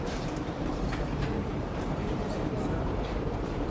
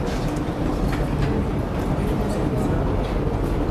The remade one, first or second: first